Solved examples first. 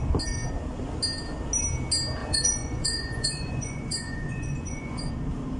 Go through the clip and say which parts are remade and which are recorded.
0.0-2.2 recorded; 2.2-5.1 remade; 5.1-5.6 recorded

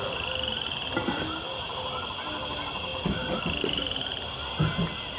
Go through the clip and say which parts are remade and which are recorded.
0.0-5.2 recorded

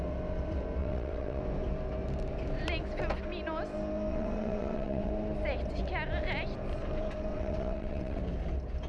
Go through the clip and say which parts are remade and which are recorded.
0.0-0.8 recorded; 0.8-1.4 remade; 1.4-4.1 recorded; 4.1-5.1 remade; 5.1-7.3 recorded; 7.3-8.2 remade; 8.2-8.9 recorded

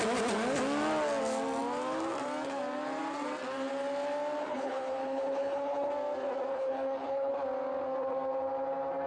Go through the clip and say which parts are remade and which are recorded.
0.0-4.4 recorded; 4.4-5.9 remade; 5.9-6.5 recorded; 6.5-7.3 remade; 7.3-9.1 recorded

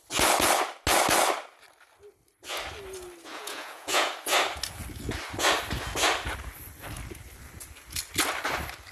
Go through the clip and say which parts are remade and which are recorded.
0.0-3.3 recorded; 3.3-4.1 remade; 4.1-8.9 recorded

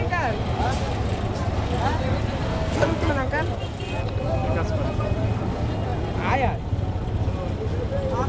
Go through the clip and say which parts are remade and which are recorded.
0.0-2.5 recorded; 2.5-3.1 remade; 3.1-8.3 recorded

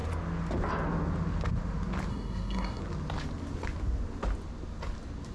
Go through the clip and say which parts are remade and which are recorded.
0.0-2.1 recorded; 2.1-2.8 remade; 2.8-5.3 recorded